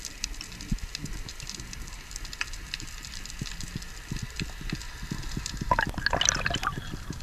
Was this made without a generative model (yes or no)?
yes